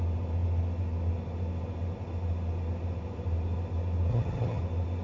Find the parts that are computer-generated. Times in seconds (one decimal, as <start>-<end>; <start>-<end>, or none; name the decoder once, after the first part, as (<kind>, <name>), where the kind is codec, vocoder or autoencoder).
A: 4.1-4.6 (vocoder, HiFi-GAN)